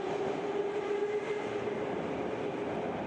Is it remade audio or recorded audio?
remade